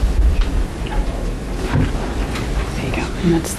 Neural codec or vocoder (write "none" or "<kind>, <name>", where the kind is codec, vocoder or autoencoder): none